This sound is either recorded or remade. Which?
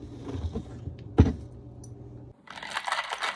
recorded